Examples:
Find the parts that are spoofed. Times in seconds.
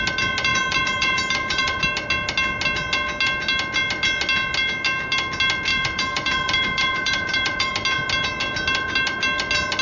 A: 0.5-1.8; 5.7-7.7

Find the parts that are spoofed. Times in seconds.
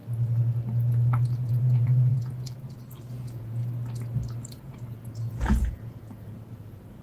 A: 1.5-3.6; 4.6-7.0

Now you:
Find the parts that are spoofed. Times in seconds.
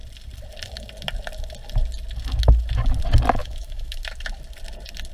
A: 3.4-4.0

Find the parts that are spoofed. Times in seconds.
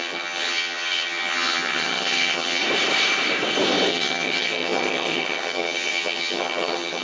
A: 0.0-2.6; 3.9-7.0